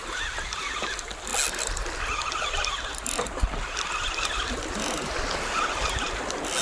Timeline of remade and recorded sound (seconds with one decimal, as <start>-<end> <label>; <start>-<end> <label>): 0.0-6.6 recorded